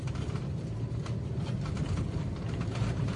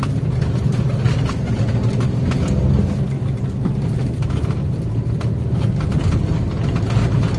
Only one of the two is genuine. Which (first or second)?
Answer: second